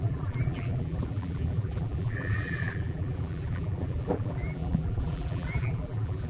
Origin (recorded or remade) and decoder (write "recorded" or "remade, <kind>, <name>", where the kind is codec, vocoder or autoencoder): remade, vocoder, BigVGAN v2